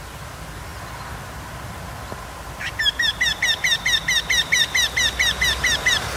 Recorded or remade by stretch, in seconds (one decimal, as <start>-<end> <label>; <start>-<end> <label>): 0.0-6.2 recorded